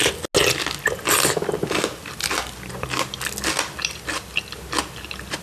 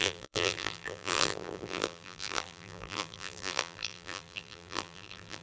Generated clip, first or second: second